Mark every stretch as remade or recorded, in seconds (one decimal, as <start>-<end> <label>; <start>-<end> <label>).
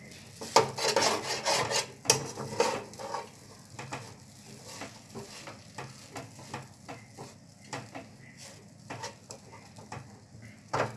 0.0-11.0 recorded